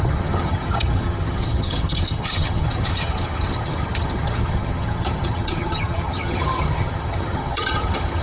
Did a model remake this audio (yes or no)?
yes